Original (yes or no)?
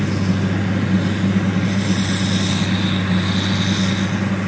yes